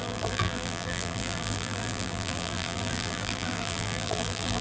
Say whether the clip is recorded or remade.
remade